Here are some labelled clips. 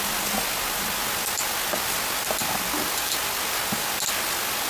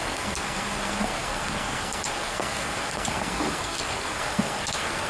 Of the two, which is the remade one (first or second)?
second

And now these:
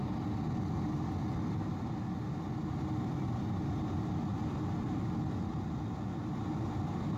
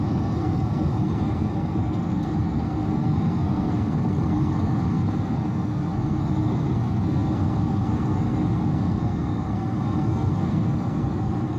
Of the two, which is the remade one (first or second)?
second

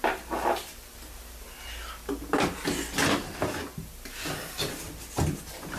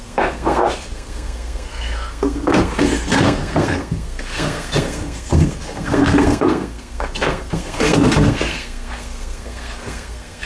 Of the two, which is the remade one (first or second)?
second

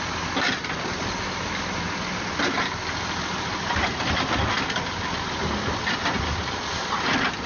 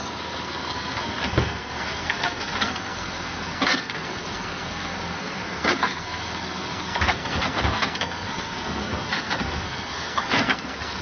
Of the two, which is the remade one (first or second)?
second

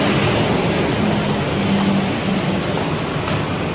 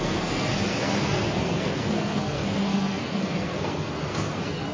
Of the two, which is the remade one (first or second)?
second